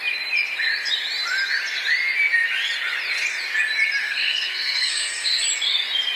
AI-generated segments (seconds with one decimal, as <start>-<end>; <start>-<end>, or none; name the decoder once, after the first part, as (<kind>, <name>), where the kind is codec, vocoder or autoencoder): 4.0-5.4 (codec, SNAC)